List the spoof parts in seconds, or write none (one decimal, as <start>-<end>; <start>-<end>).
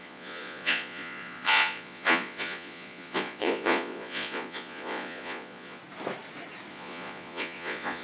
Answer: 0.0-5.8; 6.7-8.0